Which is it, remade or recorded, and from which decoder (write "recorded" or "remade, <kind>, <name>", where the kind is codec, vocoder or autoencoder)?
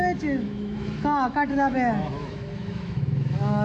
remade, autoencoder, DAC-VAE